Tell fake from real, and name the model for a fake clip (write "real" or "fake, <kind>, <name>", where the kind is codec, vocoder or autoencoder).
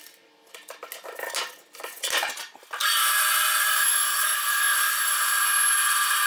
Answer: real